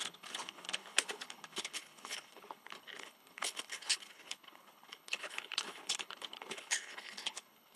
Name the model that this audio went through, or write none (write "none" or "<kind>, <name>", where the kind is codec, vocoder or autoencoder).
codec, HILCodec